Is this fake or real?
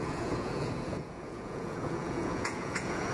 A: fake